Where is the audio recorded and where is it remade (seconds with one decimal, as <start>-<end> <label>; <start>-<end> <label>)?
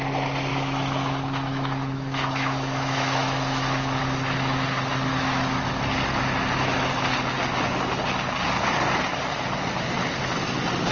0.0-0.5 recorded; 0.5-4.0 remade; 4.0-5.1 recorded; 5.1-5.8 remade; 5.8-10.9 recorded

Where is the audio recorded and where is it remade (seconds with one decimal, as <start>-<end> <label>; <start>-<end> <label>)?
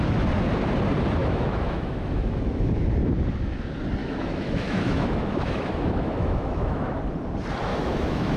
0.0-1.2 recorded; 1.2-2.7 remade; 2.7-4.0 recorded; 4.0-7.0 remade; 7.0-7.7 recorded; 7.7-8.4 remade